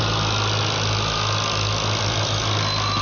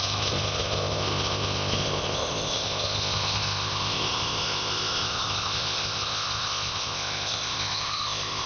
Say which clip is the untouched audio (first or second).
first